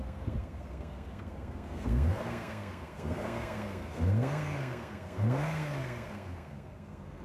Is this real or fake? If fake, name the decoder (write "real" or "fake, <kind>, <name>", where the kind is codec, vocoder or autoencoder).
fake, codec, SNAC